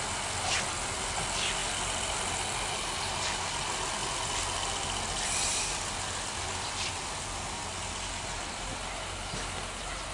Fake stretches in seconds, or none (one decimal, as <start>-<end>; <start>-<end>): none